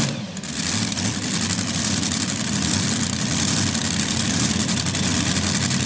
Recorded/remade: recorded